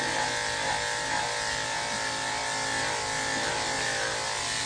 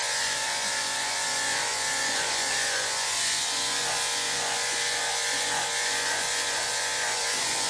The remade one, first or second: second